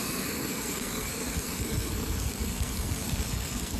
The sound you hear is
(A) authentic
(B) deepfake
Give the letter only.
B